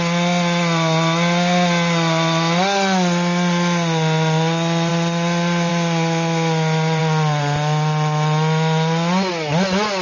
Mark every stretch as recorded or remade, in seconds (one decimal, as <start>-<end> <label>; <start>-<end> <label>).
0.0-10.0 recorded